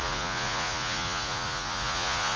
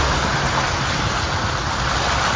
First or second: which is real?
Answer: second